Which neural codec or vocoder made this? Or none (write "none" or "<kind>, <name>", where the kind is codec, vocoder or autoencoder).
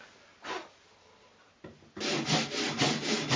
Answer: none